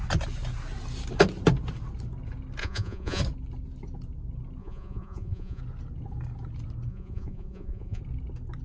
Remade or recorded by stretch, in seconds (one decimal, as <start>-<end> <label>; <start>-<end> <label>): 0.0-2.6 recorded; 2.6-3.2 remade; 3.2-4.6 recorded; 4.6-5.6 remade; 5.6-6.9 recorded; 6.9-8.0 remade; 8.0-8.6 recorded